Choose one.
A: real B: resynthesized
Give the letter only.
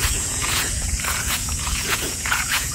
B